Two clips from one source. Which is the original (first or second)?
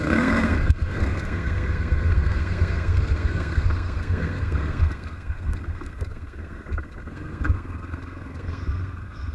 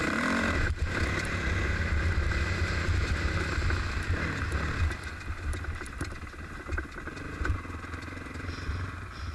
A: second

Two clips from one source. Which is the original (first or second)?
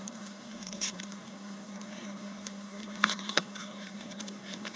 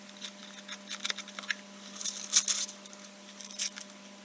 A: second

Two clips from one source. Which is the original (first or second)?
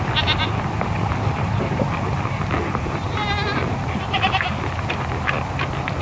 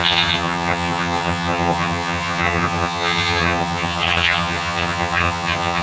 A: first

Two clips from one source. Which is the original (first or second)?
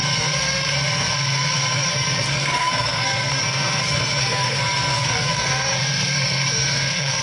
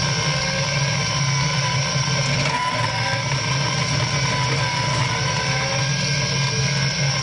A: second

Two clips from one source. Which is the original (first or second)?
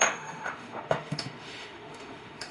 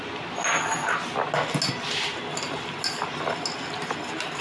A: second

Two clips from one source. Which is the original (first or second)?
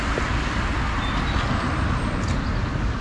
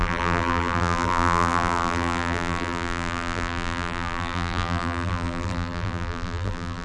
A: first